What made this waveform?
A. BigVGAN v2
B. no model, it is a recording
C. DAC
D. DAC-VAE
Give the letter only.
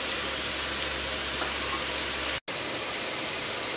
B